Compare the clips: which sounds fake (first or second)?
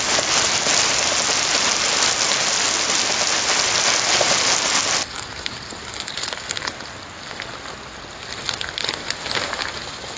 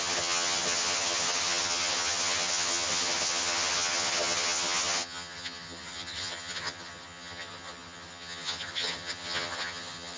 second